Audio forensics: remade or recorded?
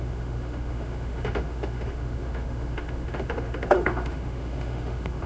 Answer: remade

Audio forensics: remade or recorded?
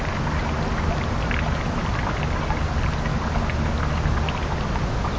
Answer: recorded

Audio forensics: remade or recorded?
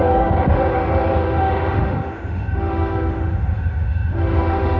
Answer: remade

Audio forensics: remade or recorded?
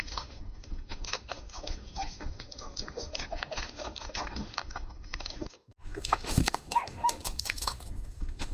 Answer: remade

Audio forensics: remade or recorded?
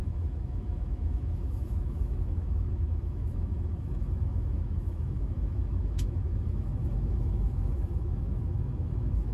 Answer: remade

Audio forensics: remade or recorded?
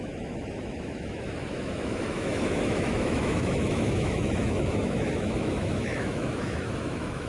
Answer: remade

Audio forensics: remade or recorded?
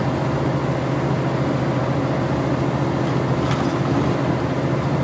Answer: recorded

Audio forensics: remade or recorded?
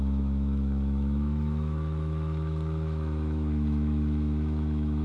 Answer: remade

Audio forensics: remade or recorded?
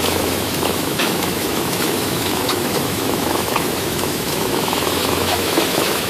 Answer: remade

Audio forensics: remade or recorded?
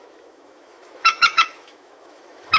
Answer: remade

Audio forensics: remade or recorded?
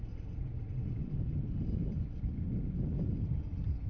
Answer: recorded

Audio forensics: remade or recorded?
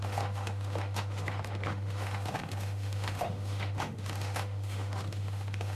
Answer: remade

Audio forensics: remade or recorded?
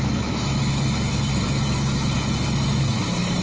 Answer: remade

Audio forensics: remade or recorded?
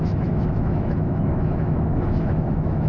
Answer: remade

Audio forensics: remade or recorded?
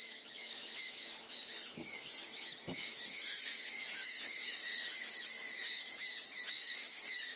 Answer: remade